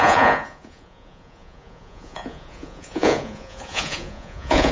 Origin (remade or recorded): remade